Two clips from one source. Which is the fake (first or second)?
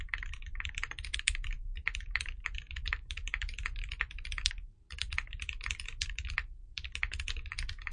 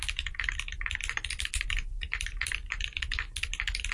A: first